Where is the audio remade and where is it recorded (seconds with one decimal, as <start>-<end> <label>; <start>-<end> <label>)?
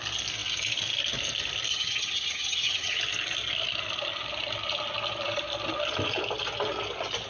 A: 0.0-1.7 recorded; 1.7-3.0 remade; 3.0-7.3 recorded